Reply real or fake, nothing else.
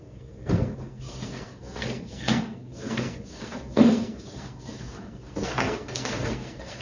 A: fake